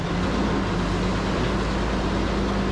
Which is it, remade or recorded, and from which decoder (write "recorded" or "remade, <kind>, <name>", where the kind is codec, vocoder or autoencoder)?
recorded